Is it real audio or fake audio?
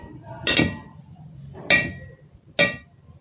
real